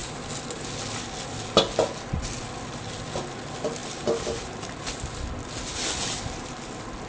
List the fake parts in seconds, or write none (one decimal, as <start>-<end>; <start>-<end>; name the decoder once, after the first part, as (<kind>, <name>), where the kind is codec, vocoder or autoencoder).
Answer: none